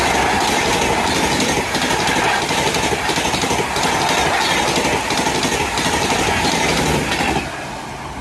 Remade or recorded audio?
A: recorded